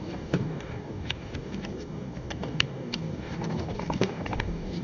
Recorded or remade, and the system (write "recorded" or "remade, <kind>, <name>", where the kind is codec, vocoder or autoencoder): remade, codec, DAC